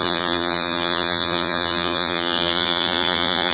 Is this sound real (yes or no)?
no